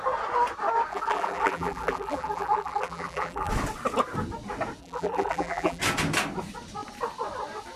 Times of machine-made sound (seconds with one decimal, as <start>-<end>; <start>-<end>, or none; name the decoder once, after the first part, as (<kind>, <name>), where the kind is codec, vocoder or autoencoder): 0.9-3.5 (vocoder, BigVGAN v2); 4.8-5.8